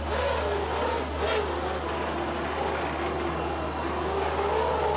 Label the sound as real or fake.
real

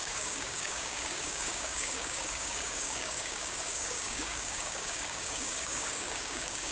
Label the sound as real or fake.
fake